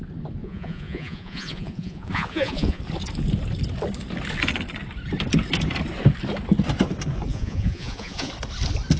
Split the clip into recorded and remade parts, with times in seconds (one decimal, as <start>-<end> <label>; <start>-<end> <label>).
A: 0.0-0.4 recorded; 0.4-2.8 remade; 2.8-7.3 recorded; 7.3-8.3 remade; 8.3-9.0 recorded